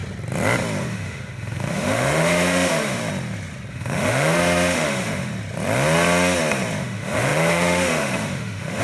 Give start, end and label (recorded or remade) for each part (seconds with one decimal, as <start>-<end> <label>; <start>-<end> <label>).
0.0-0.8 recorded; 0.8-3.0 remade; 3.0-3.7 recorded; 3.7-5.3 remade; 5.3-6.8 recorded; 6.8-8.8 remade